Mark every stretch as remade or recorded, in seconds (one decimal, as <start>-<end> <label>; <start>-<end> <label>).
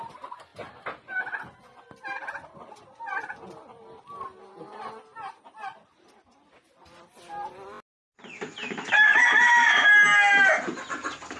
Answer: 0.0-11.4 recorded